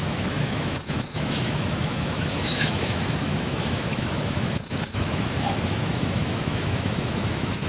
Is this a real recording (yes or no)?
no